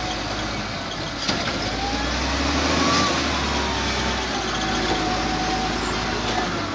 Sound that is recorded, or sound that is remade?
recorded